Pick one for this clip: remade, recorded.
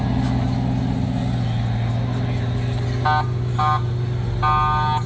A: recorded